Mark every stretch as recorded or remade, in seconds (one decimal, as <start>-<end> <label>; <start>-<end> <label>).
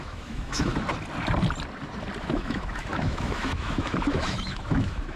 0.0-0.7 remade; 0.7-2.2 recorded; 2.2-5.2 remade